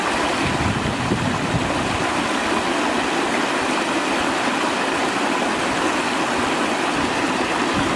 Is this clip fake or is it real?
real